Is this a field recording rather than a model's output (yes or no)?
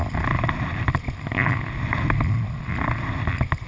yes